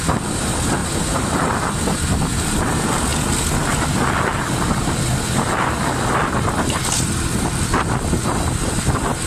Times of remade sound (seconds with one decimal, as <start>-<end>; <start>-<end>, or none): 0.8-2.3